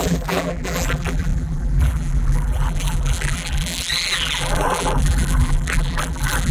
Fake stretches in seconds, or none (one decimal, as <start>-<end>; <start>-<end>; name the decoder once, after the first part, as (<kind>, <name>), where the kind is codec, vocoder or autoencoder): 0.0-6.5 (vocoder, BigVGAN v2)